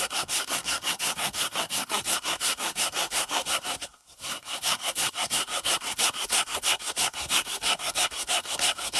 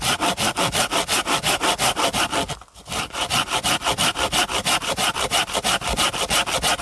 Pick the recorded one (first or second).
second